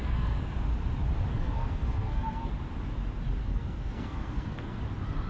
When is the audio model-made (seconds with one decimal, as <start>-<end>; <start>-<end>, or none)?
0.0-0.5; 1.3-2.5; 3.4-4.8